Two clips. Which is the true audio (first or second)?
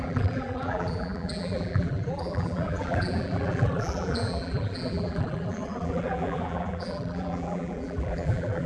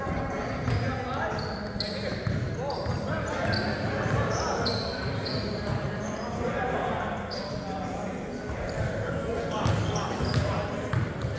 second